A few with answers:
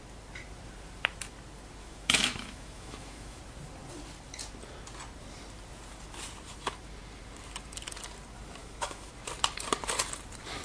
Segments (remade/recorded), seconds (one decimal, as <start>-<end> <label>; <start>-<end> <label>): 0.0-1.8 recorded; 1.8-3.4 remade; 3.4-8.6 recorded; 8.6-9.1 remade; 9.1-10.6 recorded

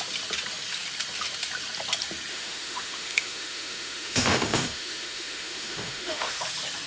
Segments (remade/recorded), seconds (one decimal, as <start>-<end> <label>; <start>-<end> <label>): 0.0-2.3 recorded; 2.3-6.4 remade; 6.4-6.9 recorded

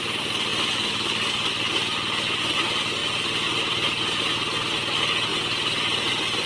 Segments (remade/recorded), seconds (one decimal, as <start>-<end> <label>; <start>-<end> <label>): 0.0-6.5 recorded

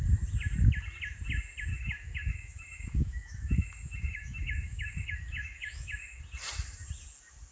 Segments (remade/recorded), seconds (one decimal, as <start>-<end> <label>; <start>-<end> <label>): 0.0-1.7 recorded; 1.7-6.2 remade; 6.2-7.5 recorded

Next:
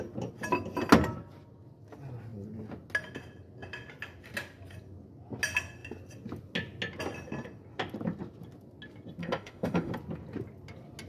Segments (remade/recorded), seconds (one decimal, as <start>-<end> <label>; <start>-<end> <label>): 0.0-9.2 recorded; 9.2-9.9 remade; 9.9-11.1 recorded

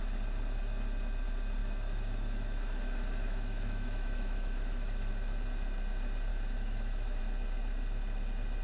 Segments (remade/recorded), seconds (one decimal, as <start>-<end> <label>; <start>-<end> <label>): 0.0-1.6 recorded; 1.6-5.1 remade; 5.1-6.3 recorded; 6.3-7.2 remade; 7.2-8.6 recorded

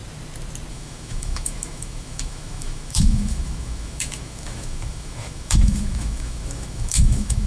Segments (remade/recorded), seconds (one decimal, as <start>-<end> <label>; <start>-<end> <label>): 0.0-0.7 recorded; 0.7-7.5 remade